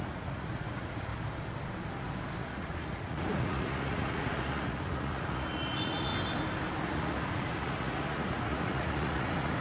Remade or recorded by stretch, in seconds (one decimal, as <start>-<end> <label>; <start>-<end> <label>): 0.0-1.1 remade; 1.1-2.4 recorded; 2.4-6.1 remade; 6.1-6.8 recorded; 6.8-9.6 remade